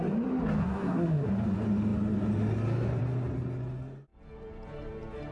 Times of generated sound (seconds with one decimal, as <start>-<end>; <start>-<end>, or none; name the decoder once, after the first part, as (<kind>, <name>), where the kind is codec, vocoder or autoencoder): 0.6-1.3 (codec, SNAC)